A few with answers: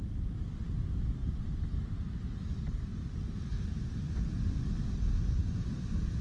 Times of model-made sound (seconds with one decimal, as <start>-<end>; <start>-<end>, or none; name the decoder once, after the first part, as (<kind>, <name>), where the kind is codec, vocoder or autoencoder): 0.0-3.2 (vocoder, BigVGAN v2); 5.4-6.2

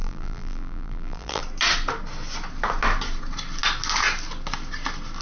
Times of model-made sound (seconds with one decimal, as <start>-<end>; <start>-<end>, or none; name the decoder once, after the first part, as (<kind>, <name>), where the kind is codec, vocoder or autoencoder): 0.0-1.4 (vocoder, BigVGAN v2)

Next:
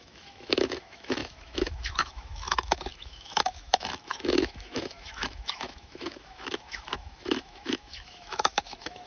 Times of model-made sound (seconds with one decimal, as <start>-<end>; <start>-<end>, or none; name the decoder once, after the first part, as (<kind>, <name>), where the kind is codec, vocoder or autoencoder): 0.0-9.1 (autoencoder, DAC-VAE)

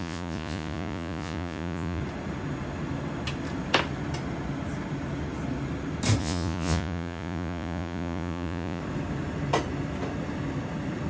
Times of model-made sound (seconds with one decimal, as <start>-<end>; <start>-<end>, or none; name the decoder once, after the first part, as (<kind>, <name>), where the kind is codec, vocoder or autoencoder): 0.0-2.0 (vocoder, Vocos); 6.2-8.8

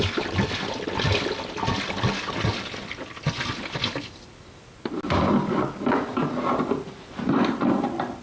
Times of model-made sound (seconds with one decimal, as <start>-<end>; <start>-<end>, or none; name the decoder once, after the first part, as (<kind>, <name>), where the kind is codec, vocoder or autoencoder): none